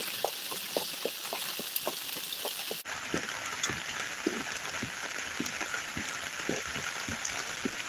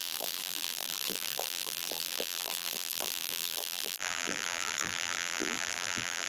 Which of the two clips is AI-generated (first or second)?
second